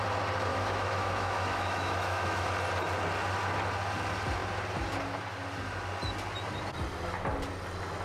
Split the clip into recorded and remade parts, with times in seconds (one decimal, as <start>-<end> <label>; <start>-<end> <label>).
0.0-0.5 recorded; 0.5-2.5 remade; 2.5-8.0 recorded